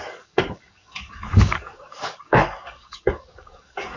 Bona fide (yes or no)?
no